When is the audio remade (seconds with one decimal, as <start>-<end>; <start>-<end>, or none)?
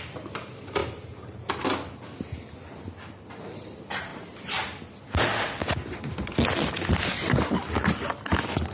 none